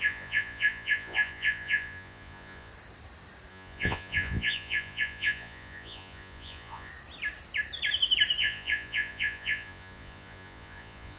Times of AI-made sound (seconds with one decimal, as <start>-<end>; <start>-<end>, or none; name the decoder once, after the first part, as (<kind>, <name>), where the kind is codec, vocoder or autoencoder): 0.0-2.7 (vocoder, Vocos); 3.5-6.9; 8.4-11.2